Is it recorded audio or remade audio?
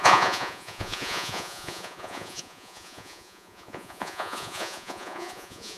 remade